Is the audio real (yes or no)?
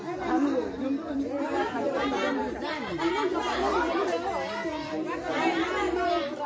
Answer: yes